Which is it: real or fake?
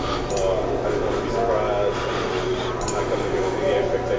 real